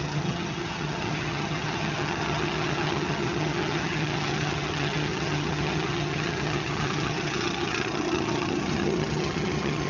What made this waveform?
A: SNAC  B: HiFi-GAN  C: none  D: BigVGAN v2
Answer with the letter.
B